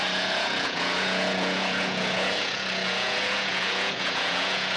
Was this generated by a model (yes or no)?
yes